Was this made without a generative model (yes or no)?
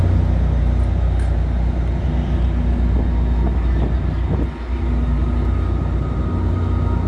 yes